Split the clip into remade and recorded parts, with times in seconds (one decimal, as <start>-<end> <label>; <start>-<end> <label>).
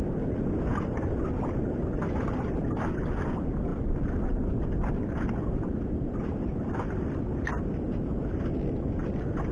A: 0.0-9.5 recorded